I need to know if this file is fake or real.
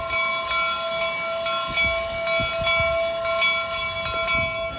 real